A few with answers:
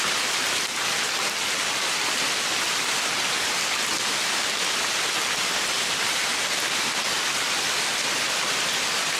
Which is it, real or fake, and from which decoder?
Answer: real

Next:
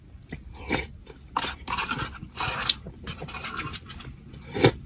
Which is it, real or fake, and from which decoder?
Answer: real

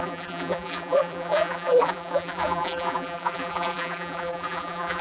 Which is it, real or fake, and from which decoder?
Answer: fake, vocoder, BigVGAN v2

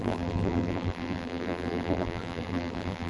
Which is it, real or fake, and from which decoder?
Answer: fake, vocoder, BigVGAN v2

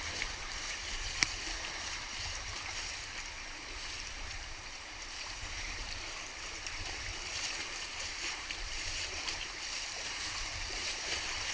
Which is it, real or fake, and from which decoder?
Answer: fake, vocoder, BigVGAN v2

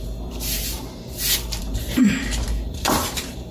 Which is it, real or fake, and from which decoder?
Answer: fake, vocoder, BigVGAN v2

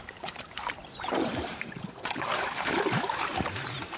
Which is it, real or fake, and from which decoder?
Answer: fake, vocoder, BigVGAN v2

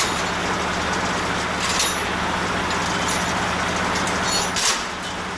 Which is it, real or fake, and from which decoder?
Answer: real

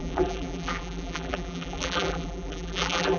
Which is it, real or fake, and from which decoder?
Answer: fake, vocoder, BigVGAN v2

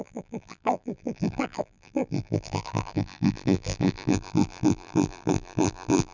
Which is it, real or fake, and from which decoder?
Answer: fake, vocoder, BigVGAN v2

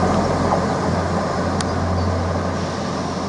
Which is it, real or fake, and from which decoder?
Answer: real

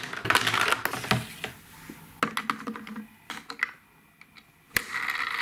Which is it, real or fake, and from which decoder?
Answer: real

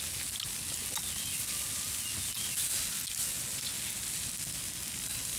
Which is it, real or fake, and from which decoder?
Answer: real